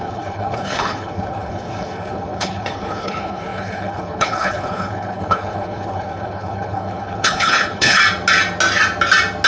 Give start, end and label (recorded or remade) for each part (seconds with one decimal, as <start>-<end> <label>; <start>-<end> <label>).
0.0-8.0 remade; 8.0-9.5 recorded